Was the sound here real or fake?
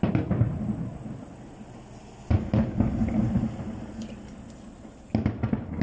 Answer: real